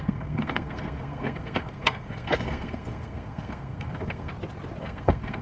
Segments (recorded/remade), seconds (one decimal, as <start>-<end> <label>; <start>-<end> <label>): 0.0-4.3 remade; 4.3-4.8 recorded; 4.8-5.4 remade